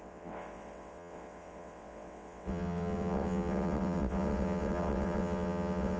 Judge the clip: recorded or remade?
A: remade